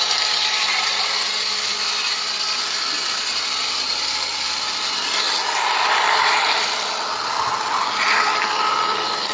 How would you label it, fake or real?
real